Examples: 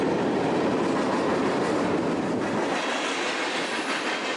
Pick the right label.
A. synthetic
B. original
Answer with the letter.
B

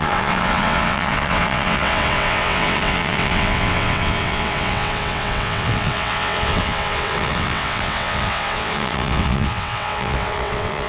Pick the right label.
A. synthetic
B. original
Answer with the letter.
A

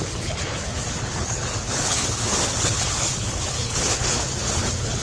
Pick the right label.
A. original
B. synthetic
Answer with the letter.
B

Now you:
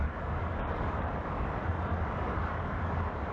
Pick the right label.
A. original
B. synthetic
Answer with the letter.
B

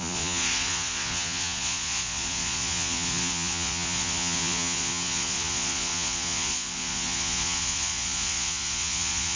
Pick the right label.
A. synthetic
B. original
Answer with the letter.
A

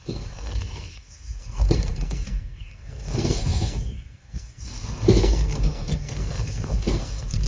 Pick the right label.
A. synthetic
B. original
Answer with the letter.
A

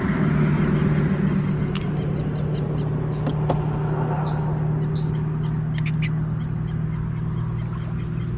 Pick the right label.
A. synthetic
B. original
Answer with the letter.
B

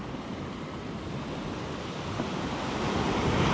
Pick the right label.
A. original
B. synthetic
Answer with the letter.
A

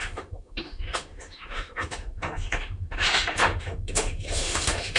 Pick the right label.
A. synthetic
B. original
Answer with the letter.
A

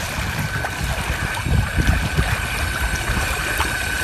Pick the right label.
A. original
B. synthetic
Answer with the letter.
A